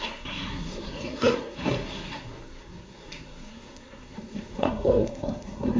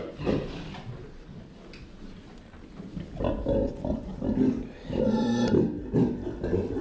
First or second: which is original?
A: second